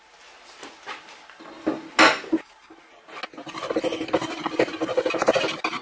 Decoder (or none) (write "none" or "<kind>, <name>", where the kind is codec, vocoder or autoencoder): none